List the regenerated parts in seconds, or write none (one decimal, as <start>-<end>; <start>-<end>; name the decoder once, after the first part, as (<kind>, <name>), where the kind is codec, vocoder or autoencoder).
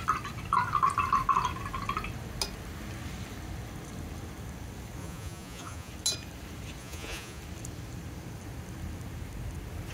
5.0-5.9 (vocoder, Vocos); 6.8-7.4